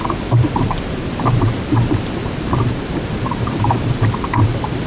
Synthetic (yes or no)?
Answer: yes